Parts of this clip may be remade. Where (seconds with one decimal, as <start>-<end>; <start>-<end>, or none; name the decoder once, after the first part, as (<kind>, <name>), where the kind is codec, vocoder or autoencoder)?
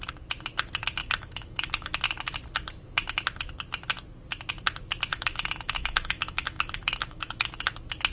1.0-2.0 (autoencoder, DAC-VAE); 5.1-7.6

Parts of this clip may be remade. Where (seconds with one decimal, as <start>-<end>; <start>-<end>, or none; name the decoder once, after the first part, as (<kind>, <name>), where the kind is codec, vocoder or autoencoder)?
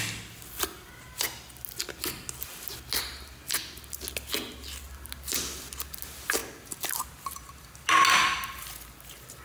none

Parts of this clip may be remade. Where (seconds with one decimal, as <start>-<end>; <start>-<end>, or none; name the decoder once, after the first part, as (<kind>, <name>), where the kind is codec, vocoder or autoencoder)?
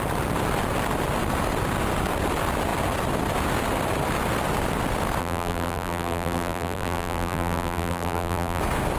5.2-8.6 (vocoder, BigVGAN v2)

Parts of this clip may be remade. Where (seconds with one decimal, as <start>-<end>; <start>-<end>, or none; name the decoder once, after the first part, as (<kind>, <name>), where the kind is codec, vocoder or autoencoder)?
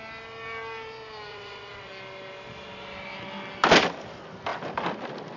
1.3-1.9 (vocoder, WaveNeXt)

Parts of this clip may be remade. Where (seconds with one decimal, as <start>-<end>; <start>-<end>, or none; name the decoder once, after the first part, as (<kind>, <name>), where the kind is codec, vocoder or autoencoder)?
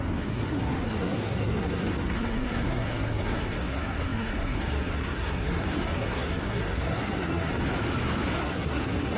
0.0-7.5 (codec, SNAC); 8.4-9.2